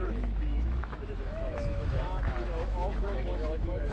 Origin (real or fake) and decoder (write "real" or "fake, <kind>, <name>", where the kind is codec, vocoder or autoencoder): fake, autoencoder, DAC-VAE